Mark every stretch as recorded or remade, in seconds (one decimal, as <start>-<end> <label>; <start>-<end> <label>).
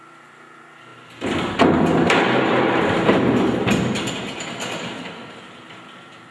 0.0-6.3 remade